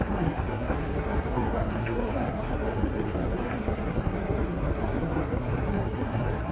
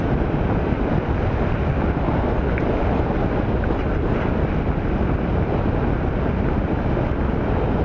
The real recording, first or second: second